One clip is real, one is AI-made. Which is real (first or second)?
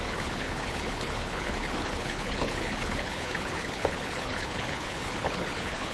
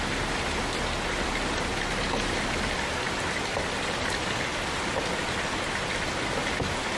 second